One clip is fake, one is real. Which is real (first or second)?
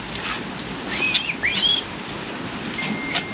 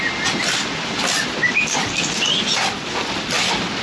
first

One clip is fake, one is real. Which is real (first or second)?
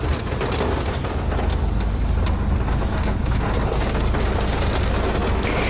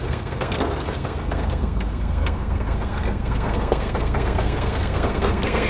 first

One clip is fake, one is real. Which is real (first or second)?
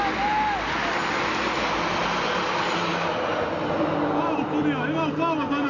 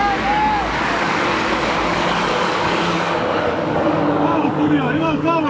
first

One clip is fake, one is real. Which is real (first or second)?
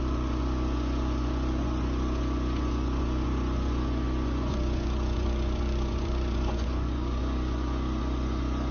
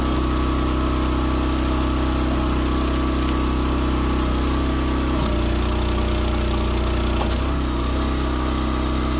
second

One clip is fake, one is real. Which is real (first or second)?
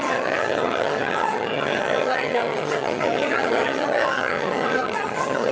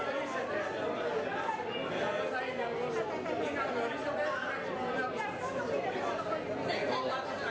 second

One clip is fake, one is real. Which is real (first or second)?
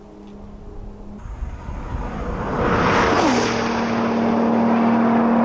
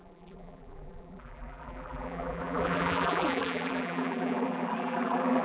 first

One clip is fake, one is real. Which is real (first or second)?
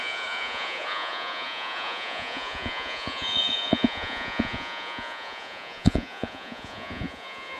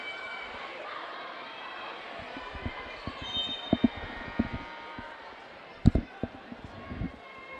second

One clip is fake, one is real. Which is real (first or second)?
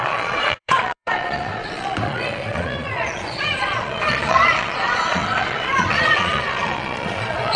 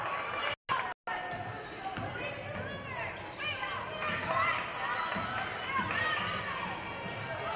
second